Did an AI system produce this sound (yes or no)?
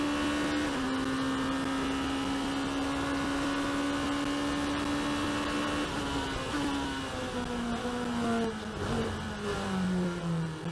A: no